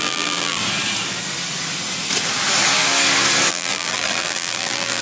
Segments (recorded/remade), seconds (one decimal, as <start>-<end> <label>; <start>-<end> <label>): 0.0-0.6 remade; 0.6-3.5 recorded; 3.5-5.0 remade